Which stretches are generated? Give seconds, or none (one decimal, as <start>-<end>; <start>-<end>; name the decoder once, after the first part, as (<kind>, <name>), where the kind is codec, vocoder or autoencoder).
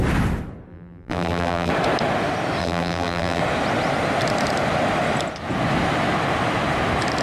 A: 0.7-1.7 (vocoder, BigVGAN v2); 2.6-3.4